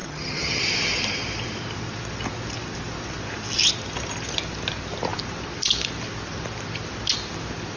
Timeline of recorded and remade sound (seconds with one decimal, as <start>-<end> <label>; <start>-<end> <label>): 0.0-0.6 remade; 0.6-7.8 recorded

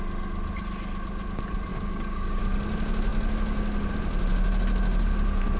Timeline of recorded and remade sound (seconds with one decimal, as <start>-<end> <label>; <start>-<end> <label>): 0.0-1.7 recorded; 1.7-2.4 remade; 2.4-5.6 recorded